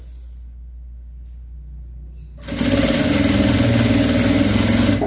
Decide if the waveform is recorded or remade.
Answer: recorded